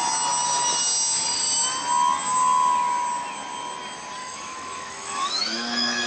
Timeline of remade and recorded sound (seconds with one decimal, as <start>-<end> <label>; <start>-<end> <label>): 0.0-4.2 recorded; 4.2-6.1 remade

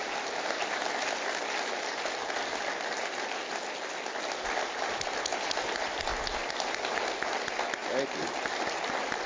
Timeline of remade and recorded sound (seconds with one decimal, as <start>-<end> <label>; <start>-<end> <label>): 0.0-9.3 recorded